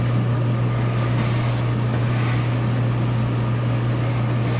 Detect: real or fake real